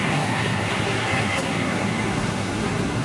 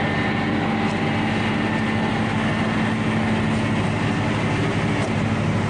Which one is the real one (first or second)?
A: second